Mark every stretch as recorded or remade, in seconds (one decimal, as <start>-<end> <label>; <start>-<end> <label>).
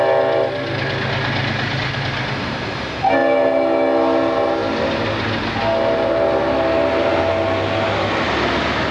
0.0-8.9 recorded